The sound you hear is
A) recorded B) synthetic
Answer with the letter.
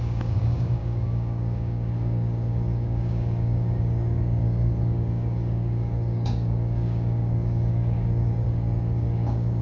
B